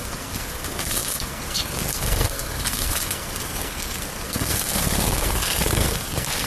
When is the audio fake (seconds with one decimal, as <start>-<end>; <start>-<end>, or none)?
0.0-6.5